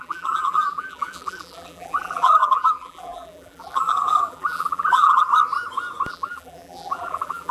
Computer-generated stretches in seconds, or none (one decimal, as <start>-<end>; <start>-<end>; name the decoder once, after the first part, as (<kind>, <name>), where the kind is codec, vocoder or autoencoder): 0.0-5.3 (vocoder, BigVGAN v2); 6.1-7.5

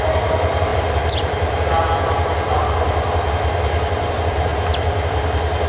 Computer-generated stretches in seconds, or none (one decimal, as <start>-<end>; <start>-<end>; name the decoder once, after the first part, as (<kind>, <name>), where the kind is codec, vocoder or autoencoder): 0.0-5.7 (vocoder, BigVGAN v2)

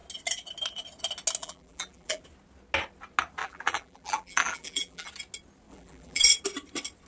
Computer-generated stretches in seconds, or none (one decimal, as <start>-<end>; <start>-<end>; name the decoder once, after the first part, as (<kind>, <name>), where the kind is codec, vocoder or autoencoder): 1.4-2.2 (vocoder, BigVGAN v2); 3.4-5.1; 5.7-6.2

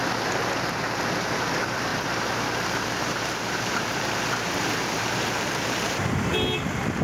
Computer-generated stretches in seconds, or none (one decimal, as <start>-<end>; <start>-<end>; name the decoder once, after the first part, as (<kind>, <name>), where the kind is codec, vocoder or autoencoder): 1.9-6.1 (vocoder, BigVGAN v2)

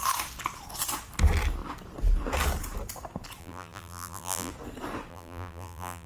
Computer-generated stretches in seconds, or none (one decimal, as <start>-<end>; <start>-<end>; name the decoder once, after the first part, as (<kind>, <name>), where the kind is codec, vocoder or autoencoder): 3.4-4.5 (vocoder, BigVGAN v2); 5.1-6.1

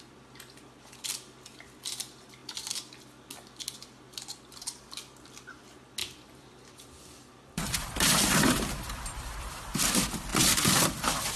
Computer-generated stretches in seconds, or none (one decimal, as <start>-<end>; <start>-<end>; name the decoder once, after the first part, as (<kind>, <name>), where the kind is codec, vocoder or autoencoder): 6.0-9.8 (vocoder, BigVGAN v2); 10.3-10.8